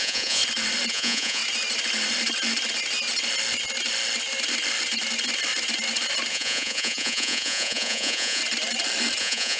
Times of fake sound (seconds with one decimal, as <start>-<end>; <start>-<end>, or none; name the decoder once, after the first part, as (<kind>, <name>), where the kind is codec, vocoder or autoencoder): 0.0-0.4 (vocoder, Vocos); 0.9-1.4; 6.3-8.4; 9.2-9.6